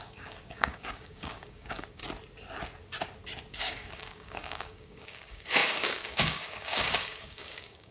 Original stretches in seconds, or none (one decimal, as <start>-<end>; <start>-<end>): 2.0-3.5